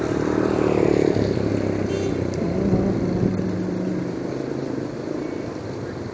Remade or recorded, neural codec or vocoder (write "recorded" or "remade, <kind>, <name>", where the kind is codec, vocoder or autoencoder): recorded